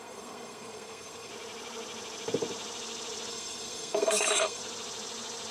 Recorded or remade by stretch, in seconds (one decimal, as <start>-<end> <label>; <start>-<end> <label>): 0.0-1.3 remade; 1.3-3.3 recorded; 3.3-4.6 remade; 4.6-5.5 recorded